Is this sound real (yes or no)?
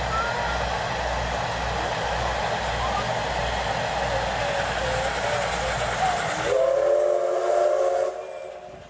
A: yes